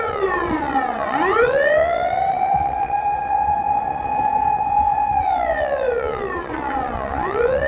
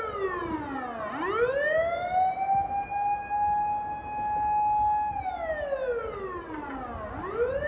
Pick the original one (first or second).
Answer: second